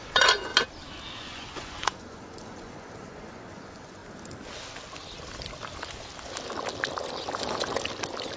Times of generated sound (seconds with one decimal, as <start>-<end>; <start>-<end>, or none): 0.0-0.5; 1.2-4.0